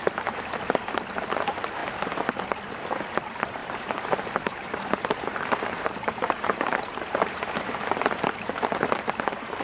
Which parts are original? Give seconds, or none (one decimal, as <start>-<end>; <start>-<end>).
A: 0.0-3.6; 8.5-9.6